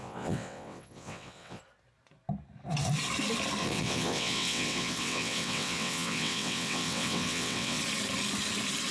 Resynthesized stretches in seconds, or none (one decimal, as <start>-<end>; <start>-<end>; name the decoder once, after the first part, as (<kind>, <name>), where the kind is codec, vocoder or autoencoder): 0.0-1.6 (vocoder, WaveNeXt); 3.6-7.8